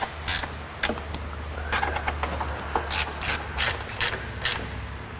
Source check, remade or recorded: recorded